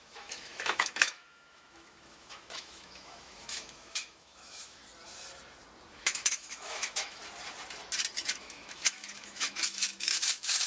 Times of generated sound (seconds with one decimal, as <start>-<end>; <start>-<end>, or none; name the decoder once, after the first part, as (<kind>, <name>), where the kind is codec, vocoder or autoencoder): 0.0-4.8 (autoencoder, DAC-VAE); 5.9-7.2; 8.3-10.7